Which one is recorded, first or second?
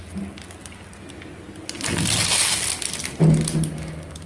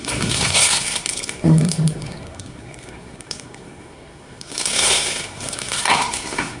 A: first